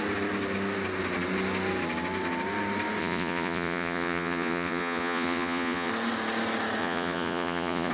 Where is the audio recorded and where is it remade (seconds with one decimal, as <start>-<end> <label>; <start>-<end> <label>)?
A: 0.0-3.0 recorded; 3.0-5.9 remade; 5.9-6.8 recorded; 6.8-7.9 remade

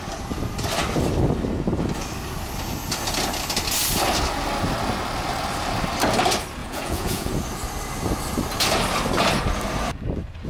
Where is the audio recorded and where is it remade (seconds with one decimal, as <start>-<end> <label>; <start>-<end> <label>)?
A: 0.0-6.6 recorded; 6.6-7.3 remade; 7.3-10.5 recorded